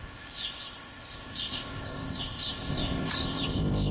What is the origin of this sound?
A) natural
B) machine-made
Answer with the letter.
B